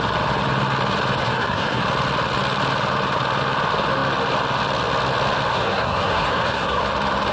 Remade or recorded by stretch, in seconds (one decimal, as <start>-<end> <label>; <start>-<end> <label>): 0.0-1.2 recorded; 1.2-1.8 remade; 1.8-5.5 recorded; 5.5-6.8 remade; 6.8-7.3 recorded

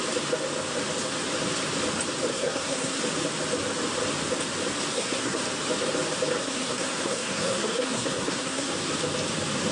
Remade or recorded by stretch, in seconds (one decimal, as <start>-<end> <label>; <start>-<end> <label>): 0.0-2.3 recorded; 2.3-3.0 remade; 3.0-4.9 recorded; 4.9-5.4 remade; 5.4-6.4 recorded; 6.4-8.7 remade; 8.7-9.7 recorded

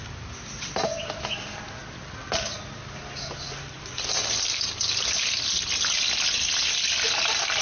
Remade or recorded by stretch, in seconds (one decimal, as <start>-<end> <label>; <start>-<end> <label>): 0.0-7.6 recorded

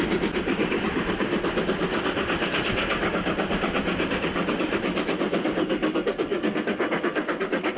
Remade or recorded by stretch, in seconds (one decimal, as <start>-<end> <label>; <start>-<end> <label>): 0.0-5.6 recorded; 5.6-7.8 remade

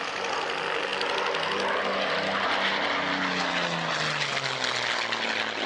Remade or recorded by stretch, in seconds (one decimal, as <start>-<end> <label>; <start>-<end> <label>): 0.0-5.7 recorded